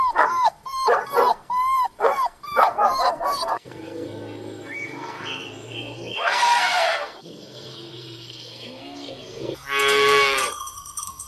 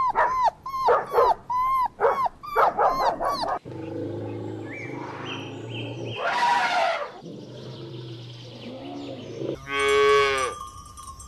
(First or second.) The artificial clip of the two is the first